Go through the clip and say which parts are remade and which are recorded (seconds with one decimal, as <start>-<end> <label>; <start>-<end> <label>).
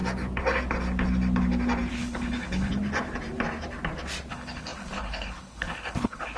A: 0.0-1.9 recorded; 1.9-2.7 remade; 2.7-4.3 recorded; 4.3-6.4 remade